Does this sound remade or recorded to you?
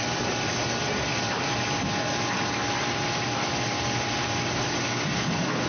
remade